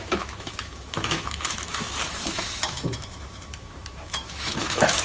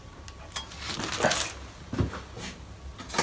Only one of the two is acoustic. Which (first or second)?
second